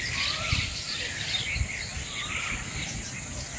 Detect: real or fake real